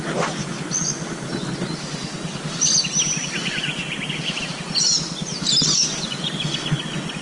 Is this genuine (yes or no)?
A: yes